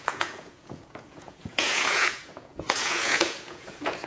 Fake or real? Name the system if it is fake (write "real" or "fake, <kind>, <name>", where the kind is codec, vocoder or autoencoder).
fake, vocoder, Vocos